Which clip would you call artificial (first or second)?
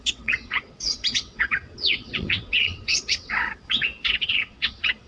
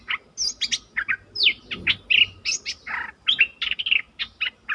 first